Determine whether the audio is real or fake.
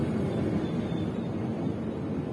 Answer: real